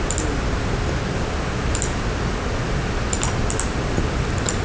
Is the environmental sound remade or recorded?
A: recorded